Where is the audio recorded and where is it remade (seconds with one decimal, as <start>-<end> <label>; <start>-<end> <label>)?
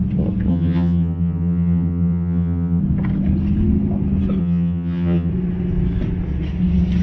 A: 0.0-0.5 recorded; 0.5-2.8 remade; 2.8-4.4 recorded; 4.4-5.3 remade; 5.3-7.0 recorded